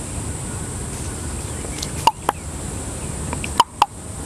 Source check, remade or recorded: recorded